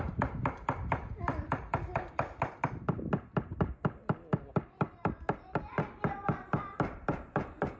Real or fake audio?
real